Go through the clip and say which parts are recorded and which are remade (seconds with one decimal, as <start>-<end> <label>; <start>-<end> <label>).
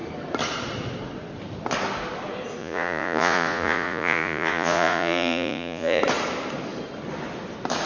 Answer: 0.0-2.6 recorded; 2.6-6.0 remade; 6.0-7.9 recorded